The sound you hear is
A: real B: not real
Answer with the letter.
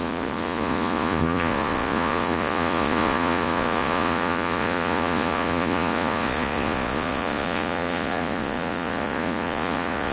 B